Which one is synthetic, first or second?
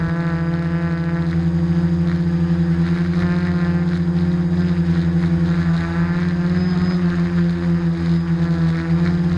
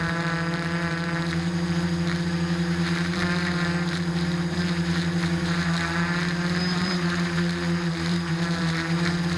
second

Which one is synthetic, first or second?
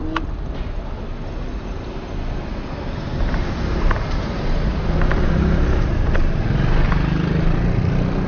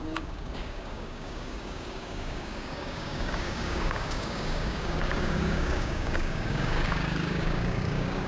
second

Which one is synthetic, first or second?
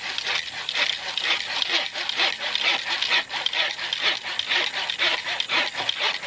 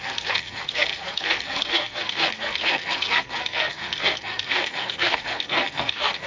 second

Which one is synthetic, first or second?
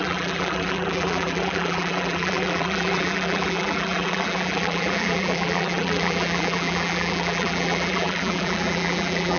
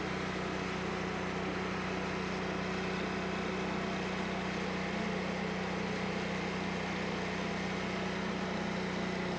first